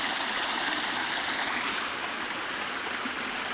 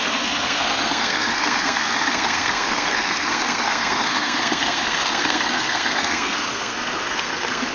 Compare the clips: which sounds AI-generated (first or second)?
second